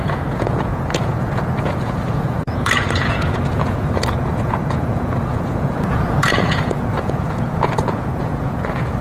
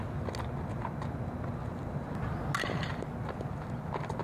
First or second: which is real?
second